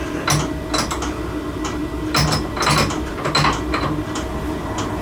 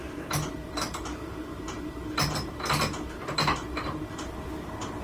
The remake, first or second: second